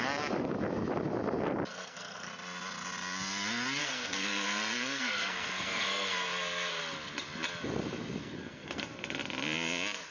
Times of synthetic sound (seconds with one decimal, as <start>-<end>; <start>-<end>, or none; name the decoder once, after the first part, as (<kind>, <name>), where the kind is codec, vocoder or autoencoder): 1.7-2.3 (codec, SNAC); 3.8-6.8; 8.2-8.8